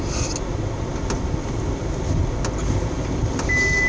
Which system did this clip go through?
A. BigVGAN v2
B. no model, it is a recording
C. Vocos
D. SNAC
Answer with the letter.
B